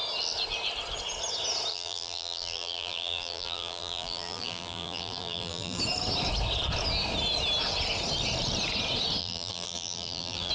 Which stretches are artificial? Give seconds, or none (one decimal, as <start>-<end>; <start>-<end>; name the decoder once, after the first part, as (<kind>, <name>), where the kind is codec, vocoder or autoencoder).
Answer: 1.7-5.8 (vocoder, BigVGAN v2); 9.2-10.5